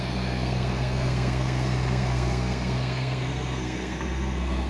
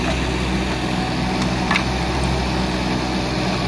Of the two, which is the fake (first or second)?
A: first